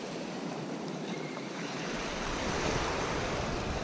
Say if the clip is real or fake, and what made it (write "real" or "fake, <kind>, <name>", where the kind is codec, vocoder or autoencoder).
fake, vocoder, BigVGAN v2